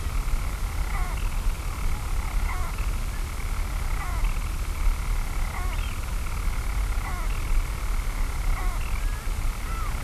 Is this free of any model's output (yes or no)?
yes